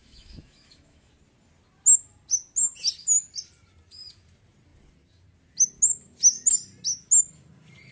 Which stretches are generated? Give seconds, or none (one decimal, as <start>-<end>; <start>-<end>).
0.0-1.1